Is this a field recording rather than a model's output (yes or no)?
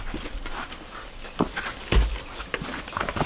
yes